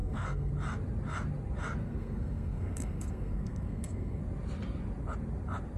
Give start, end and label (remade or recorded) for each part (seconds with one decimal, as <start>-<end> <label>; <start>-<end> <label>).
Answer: 0.0-0.5 remade; 0.5-1.8 recorded; 1.8-4.2 remade; 4.2-5.8 recorded